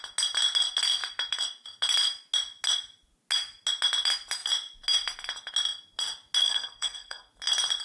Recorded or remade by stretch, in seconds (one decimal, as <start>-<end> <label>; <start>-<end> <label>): 0.0-6.4 recorded; 6.4-7.3 remade; 7.3-7.8 recorded